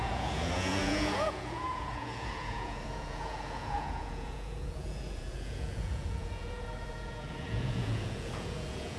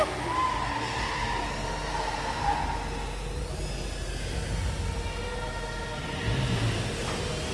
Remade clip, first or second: first